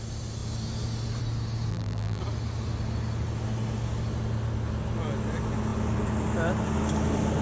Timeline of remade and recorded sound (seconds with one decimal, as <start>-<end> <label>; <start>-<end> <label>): 0.0-1.7 recorded; 1.7-2.2 remade; 2.2-7.4 recorded